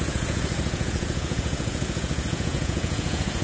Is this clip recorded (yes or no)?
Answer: no